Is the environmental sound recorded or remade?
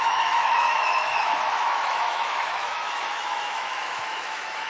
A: remade